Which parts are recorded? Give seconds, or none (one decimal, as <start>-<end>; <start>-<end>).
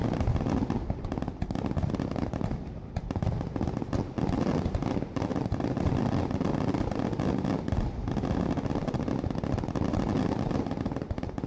0.0-11.5